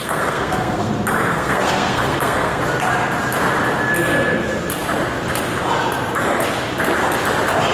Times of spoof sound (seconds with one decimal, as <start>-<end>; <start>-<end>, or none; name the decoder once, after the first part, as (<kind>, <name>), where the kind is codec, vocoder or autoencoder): 0.0-0.9 (codec, SNAC); 1.3-2.6